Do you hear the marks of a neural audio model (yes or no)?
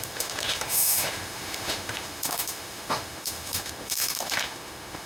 yes